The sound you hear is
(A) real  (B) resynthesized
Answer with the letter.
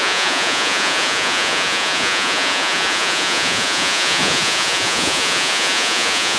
B